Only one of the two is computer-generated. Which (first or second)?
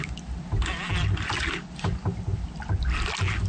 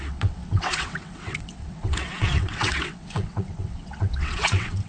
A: second